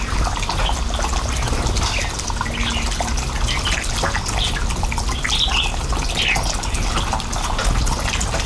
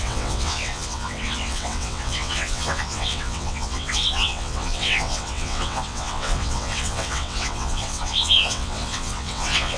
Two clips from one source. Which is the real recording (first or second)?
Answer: first